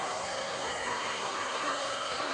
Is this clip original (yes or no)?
no